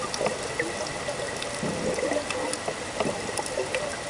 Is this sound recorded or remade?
recorded